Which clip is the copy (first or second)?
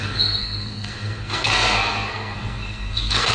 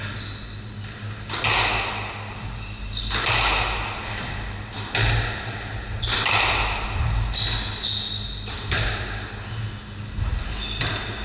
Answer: first